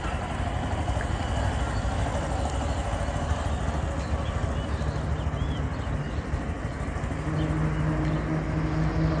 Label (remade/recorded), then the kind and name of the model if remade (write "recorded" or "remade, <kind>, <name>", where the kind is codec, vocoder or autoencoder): recorded